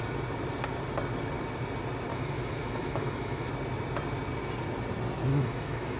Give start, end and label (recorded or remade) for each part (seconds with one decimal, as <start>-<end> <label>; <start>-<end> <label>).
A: 0.0-2.1 recorded; 2.1-3.5 remade; 3.5-5.3 recorded; 5.3-6.0 remade